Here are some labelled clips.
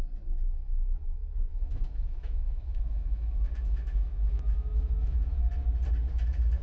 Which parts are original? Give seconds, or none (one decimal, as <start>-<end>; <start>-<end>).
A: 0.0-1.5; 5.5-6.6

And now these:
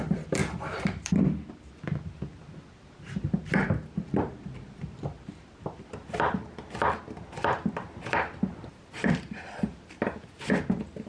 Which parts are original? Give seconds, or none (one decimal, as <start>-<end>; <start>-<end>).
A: 0.0-0.4; 1.5-11.1

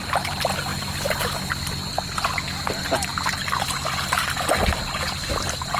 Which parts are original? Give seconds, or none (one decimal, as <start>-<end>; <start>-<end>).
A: 0.0-5.8

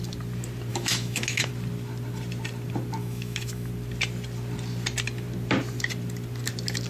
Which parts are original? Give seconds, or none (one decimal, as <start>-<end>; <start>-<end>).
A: 0.0-0.7; 1.5-3.0; 3.7-6.9